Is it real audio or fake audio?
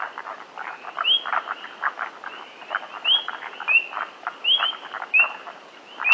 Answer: real